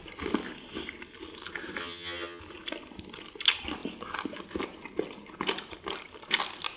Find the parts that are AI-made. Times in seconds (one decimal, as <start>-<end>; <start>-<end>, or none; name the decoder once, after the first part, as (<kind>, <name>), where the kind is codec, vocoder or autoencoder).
1.8-2.4 (vocoder, HiFi-GAN)